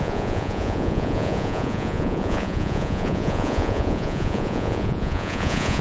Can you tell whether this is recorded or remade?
remade